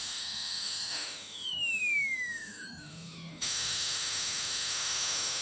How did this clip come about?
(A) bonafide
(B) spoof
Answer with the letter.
B